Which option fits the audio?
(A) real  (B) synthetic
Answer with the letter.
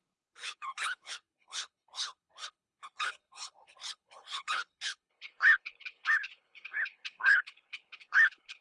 B